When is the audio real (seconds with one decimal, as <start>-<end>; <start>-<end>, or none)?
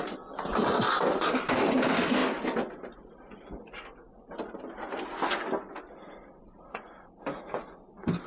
0.0-8.3